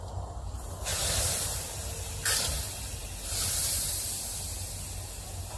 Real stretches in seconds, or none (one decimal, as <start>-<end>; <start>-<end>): 0.0-5.6

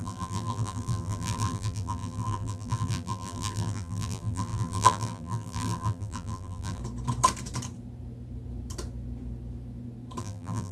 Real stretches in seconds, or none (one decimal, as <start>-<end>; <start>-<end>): 6.8-10.2

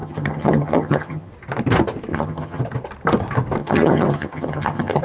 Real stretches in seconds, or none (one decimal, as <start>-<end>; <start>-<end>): 1.3-2.1; 2.6-3.6

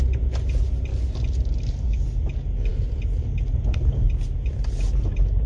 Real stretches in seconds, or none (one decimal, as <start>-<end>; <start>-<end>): 0.0-5.5